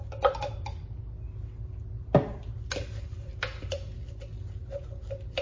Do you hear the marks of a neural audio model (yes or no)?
no